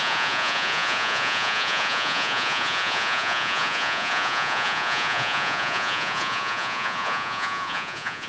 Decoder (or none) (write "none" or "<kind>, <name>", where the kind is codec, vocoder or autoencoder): vocoder, Vocos